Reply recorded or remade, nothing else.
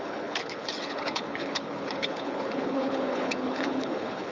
remade